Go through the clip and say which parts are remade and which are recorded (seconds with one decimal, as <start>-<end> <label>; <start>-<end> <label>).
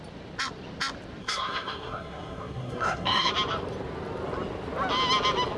0.0-1.2 recorded; 1.2-3.3 remade; 3.3-5.6 recorded